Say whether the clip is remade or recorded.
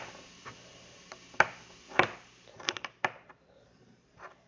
remade